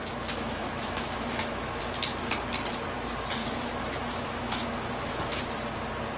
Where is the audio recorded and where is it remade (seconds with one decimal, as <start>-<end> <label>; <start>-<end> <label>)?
0.0-1.8 remade; 1.8-3.4 recorded; 3.4-5.4 remade; 5.4-6.2 recorded